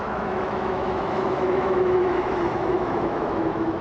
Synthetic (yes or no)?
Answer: yes